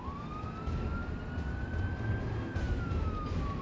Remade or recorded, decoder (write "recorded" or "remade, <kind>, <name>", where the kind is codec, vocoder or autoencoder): recorded